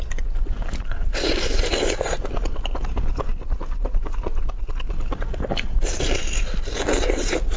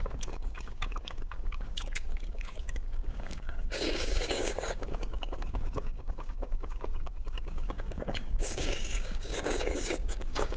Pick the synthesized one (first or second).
second